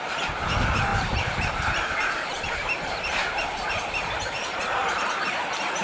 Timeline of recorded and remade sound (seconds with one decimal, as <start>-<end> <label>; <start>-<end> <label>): 0.0-0.9 recorded; 0.9-3.7 remade; 3.7-5.8 recorded